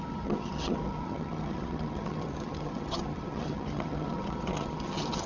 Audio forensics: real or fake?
fake